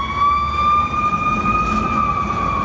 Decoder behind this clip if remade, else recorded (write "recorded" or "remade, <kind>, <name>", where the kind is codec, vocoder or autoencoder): recorded